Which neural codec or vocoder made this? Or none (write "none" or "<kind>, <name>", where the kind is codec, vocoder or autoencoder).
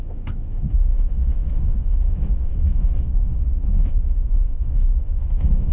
autoencoder, DAC-VAE